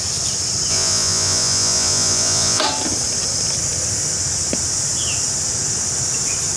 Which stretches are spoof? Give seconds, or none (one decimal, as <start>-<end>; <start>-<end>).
0.7-2.6